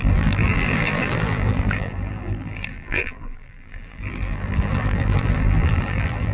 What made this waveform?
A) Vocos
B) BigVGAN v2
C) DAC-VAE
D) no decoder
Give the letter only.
B